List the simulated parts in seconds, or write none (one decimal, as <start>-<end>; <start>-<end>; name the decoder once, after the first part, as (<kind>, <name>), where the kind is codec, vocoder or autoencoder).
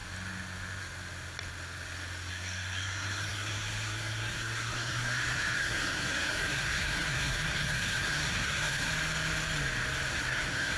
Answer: 2.3-8.9 (codec, SNAC); 10.1-10.8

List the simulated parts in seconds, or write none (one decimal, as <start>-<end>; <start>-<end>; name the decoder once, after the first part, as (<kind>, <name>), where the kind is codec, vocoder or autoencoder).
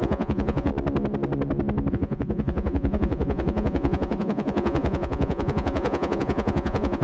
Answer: 0.0-0.7 (vocoder, Vocos); 1.9-7.0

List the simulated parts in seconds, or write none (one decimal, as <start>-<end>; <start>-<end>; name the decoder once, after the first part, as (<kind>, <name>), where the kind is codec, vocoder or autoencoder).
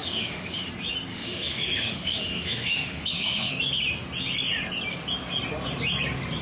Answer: 0.0-0.7 (autoencoder, DAC-VAE); 1.1-3.6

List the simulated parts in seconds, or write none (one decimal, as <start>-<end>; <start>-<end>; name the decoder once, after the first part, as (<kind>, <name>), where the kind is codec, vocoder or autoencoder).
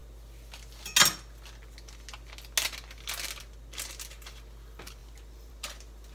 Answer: none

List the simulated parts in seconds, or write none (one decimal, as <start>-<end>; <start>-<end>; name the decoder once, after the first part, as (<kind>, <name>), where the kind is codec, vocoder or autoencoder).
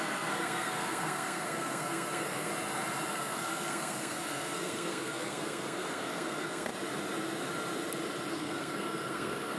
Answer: 0.0-2.5 (codec, SNAC); 3.1-6.7; 8.3-9.6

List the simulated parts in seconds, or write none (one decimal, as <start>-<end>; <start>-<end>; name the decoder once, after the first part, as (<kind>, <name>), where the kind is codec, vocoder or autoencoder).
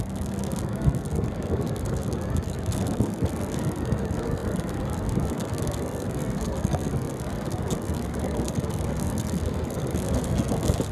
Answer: 0.0-10.9 (codec, SNAC)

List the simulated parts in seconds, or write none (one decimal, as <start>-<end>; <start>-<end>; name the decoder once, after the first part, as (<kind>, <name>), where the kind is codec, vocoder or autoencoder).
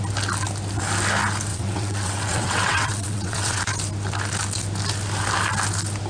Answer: 1.5-3.6 (vocoder, WaveNeXt)